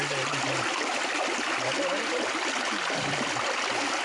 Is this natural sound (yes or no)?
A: yes